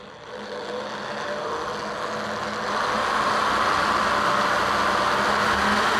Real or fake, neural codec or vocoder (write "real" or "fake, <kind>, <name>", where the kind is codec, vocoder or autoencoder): real